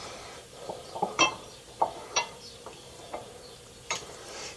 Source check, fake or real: fake